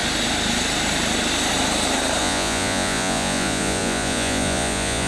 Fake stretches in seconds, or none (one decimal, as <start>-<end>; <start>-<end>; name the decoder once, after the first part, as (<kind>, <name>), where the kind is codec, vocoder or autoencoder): 2.2-5.1 (vocoder, Vocos)